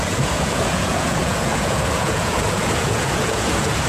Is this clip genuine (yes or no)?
no